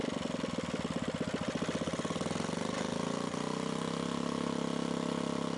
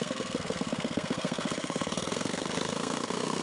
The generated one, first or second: second